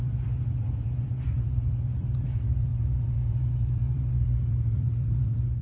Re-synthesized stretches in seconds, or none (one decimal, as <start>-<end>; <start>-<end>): 0.0-5.6